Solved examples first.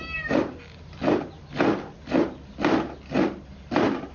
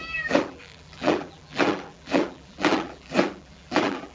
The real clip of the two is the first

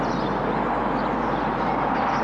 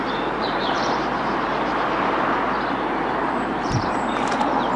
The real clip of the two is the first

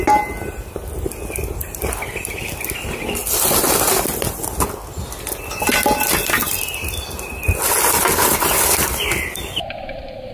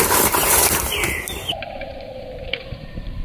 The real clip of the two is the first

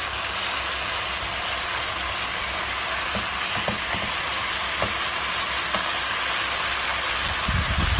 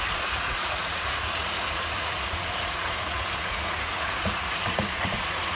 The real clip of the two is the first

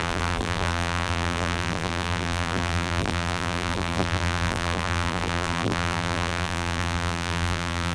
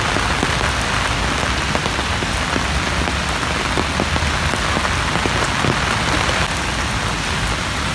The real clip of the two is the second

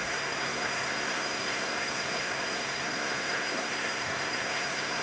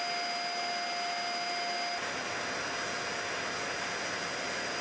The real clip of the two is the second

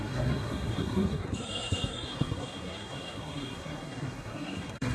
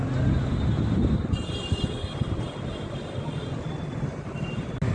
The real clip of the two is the second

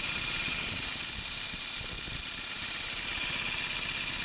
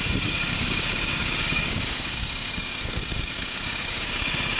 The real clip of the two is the first